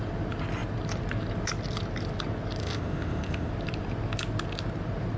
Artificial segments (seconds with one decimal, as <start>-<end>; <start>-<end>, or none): 2.6-3.5